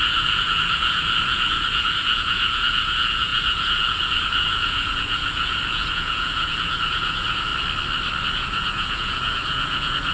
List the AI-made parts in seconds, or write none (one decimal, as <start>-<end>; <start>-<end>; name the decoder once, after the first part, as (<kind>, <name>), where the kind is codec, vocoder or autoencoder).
0.0-7.5 (vocoder, Vocos); 8.3-10.1